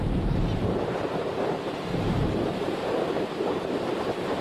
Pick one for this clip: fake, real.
fake